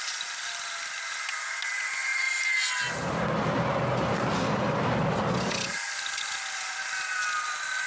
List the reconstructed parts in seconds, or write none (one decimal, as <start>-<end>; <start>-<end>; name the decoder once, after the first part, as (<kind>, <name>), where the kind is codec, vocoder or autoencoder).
none